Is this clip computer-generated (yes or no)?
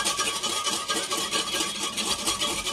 no